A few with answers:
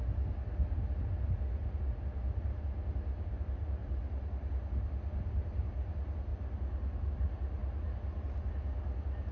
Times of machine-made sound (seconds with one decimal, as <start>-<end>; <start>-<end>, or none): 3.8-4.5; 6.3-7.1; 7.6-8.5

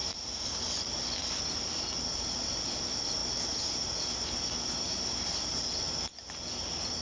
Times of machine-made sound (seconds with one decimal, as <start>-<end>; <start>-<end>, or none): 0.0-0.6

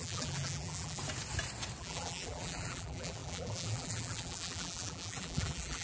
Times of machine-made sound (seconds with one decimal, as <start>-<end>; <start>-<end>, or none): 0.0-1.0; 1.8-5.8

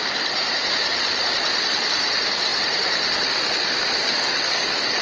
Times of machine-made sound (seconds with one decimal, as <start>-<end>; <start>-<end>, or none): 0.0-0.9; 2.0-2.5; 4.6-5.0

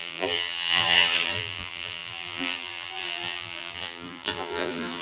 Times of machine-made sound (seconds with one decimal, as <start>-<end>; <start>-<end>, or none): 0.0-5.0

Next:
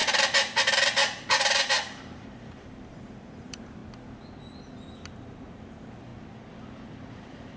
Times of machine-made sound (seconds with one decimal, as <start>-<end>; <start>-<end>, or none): 1.4-3.8; 5.6-6.1; 7.1-7.6